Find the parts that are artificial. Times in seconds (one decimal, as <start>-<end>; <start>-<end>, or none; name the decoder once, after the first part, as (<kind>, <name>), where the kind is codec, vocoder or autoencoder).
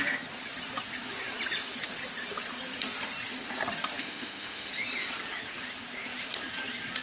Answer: 4.0-4.7 (autoencoder, DAC-VAE)